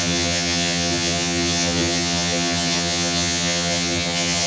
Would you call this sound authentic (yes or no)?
no